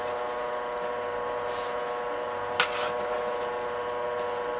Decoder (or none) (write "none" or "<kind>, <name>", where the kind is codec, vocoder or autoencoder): none